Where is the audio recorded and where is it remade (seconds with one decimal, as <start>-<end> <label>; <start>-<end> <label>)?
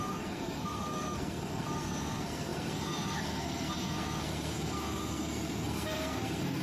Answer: 0.0-6.6 remade